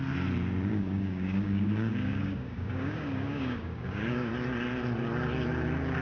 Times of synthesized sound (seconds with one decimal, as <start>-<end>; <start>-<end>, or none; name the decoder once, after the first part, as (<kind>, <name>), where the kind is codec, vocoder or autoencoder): 0.7-4.3 (codec, DAC)